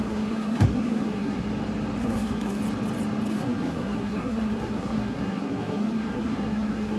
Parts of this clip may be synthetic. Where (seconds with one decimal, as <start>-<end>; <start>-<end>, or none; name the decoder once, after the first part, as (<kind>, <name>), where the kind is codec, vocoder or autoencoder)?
0.0-1.5 (codec, SNAC); 2.0-2.6; 3.3-7.0